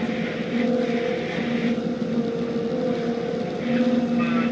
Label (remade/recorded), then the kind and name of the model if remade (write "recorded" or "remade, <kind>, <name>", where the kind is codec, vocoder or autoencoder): recorded